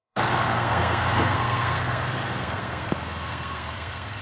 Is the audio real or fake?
fake